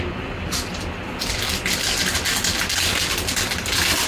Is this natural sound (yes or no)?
yes